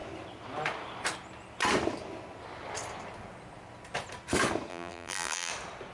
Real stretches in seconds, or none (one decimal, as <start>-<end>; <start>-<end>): 0.0-4.7; 5.5-5.9